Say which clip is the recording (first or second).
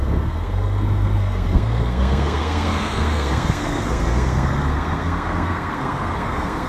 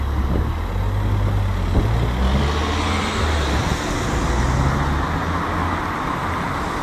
second